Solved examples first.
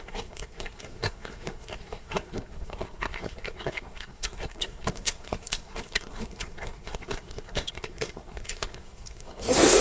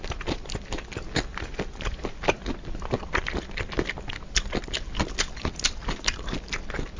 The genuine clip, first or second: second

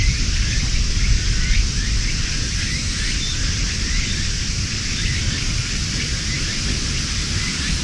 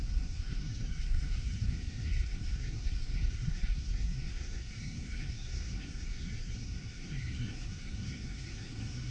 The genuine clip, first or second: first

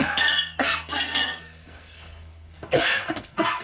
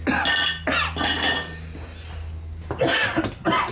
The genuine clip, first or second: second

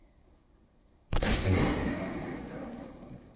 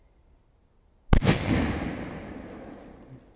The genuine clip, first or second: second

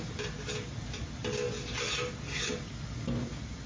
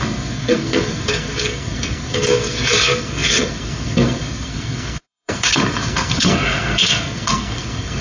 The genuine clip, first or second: first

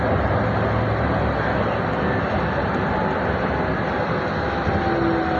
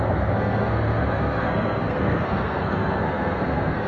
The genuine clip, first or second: first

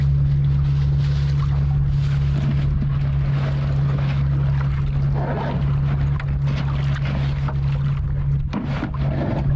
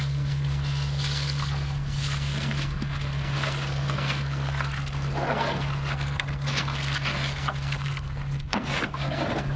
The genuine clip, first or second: first